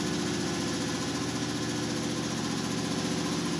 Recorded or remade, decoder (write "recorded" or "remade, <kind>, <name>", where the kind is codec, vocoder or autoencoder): recorded